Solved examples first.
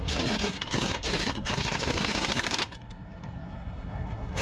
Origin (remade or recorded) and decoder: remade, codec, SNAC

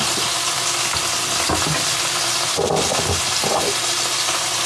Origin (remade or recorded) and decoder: recorded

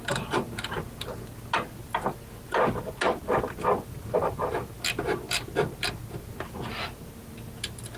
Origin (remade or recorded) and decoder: recorded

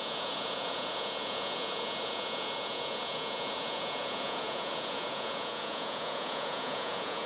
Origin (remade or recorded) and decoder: remade, vocoder, Vocos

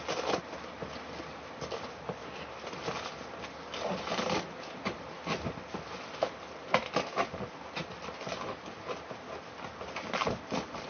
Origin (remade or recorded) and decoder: recorded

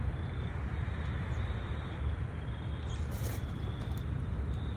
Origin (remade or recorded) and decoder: remade, vocoder, BigVGAN v2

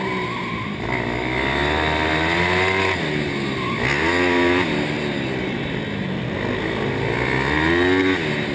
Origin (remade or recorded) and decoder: recorded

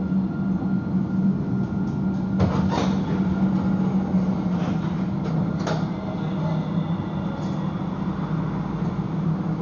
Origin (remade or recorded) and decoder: recorded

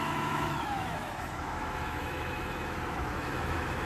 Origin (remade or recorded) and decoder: remade, autoencoder, DAC-VAE